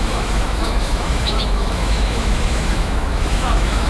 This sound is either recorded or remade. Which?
remade